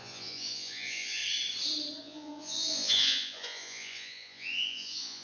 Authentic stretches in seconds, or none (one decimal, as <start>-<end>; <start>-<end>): 1.2-2.0